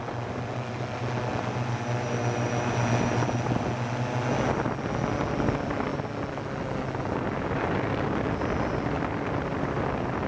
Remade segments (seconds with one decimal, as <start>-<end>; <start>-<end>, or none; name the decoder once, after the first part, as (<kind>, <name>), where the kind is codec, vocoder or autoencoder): none